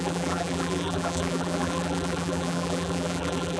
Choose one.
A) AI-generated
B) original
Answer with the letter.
A